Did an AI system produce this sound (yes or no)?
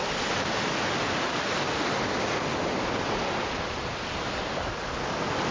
no